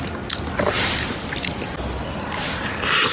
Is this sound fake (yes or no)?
no